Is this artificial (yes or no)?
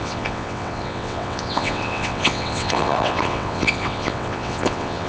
yes